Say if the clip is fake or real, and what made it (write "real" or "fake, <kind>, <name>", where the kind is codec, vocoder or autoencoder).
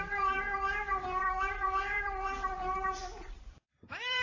fake, vocoder, BigVGAN v2